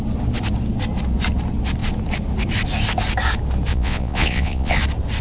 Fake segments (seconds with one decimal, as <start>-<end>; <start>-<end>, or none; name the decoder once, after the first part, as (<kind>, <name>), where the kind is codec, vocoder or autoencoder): 3.7-4.8 (vocoder, Vocos)